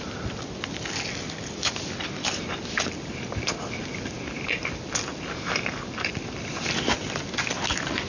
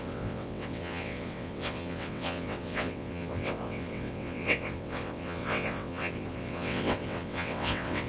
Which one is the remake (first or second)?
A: second